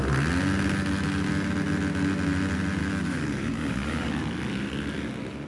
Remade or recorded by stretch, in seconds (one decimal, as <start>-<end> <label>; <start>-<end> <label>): 0.0-2.8 recorded; 2.8-4.1 remade; 4.1-5.5 recorded